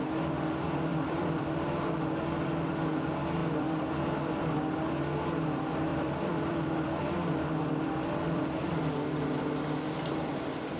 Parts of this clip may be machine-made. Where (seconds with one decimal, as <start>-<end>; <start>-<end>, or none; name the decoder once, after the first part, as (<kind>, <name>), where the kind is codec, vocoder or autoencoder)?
0.9-1.9 (vocoder, BigVGAN v2); 3.4-4.6; 5.9-9.4